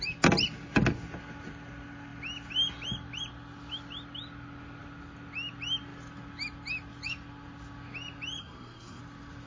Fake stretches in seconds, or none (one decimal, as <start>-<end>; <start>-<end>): 8.4-9.0